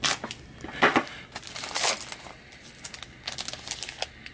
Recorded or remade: recorded